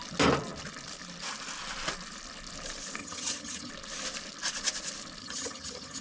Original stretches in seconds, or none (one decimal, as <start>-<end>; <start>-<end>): 0.0-3.0; 3.7-5.2